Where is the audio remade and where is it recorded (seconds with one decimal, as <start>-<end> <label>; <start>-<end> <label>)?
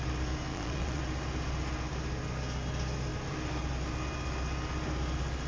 0.0-0.5 recorded; 0.5-1.0 remade; 1.0-5.5 recorded